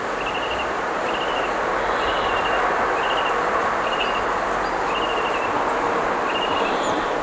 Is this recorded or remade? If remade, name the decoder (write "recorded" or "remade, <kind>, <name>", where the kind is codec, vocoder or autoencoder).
recorded